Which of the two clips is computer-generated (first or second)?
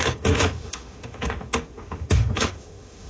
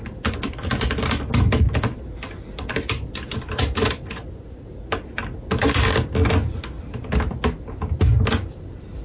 first